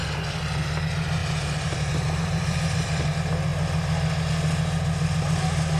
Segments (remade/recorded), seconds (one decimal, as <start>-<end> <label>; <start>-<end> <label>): 0.0-1.2 recorded; 1.2-3.1 remade; 3.1-5.8 recorded